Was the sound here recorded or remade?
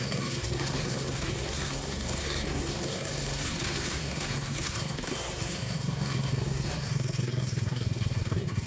remade